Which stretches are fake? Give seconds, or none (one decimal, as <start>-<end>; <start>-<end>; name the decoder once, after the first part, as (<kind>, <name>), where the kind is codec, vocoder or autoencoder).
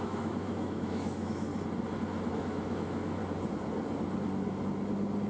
0.0-1.5 (autoencoder, DAC-VAE); 2.3-3.2